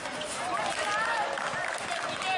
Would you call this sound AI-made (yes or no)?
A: no